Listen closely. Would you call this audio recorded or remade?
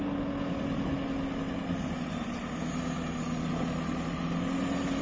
recorded